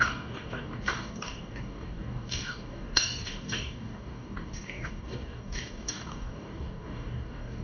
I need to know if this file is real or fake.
fake